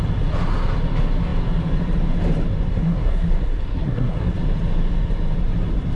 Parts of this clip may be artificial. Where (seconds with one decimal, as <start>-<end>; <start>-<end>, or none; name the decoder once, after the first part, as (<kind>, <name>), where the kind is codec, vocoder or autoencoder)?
2.7-4.3 (codec, SNAC)

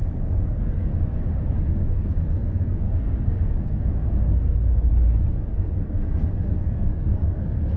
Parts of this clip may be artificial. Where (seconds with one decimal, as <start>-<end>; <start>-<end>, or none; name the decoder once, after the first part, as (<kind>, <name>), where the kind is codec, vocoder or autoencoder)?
0.0-0.9 (codec, SNAC); 1.6-4.9; 5.5-7.8

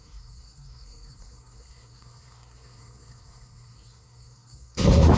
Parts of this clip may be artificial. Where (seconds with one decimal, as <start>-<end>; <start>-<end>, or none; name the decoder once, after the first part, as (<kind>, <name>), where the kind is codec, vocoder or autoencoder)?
0.0-5.2 (codec, SNAC)

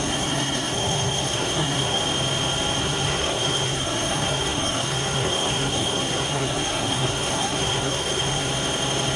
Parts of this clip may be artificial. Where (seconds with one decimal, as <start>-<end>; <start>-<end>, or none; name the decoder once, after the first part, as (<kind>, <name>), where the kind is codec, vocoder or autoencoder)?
0.0-2.0 (codec, SNAC); 2.8-8.5

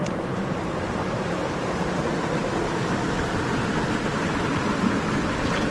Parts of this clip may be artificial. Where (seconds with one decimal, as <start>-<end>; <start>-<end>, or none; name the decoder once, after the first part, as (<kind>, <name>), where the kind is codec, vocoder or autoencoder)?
none

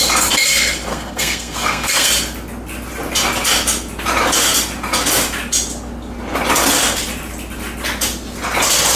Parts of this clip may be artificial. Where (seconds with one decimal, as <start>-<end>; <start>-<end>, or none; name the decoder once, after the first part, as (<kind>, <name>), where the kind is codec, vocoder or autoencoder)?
0.9-2.1 (codec, SNAC)

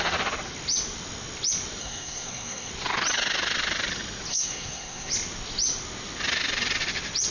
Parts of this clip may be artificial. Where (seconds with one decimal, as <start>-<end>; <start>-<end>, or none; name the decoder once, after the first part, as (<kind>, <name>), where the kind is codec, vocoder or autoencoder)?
1.8-2.7 (codec, SNAC); 4.3-5.1